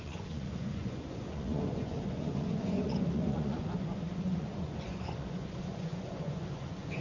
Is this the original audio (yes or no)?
no